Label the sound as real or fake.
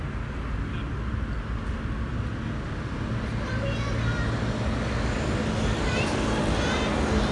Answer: real